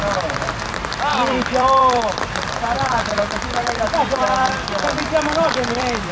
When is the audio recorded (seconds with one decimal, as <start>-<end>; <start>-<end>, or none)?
0.0-1.1; 4.6-5.0